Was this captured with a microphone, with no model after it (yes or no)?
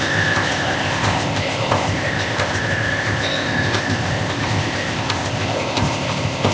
no